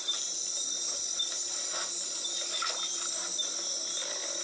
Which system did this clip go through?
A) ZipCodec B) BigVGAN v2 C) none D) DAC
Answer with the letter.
C